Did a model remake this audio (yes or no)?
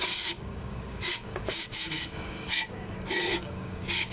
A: yes